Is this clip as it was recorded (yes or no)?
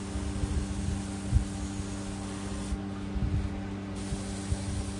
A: yes